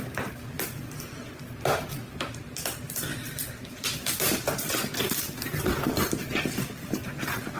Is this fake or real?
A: real